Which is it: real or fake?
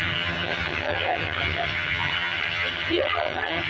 fake